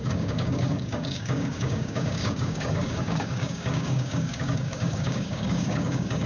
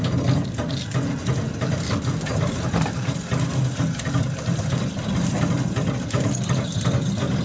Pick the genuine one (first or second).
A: second